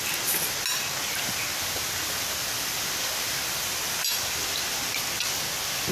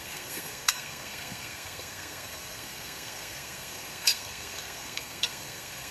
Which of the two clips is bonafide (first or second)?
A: first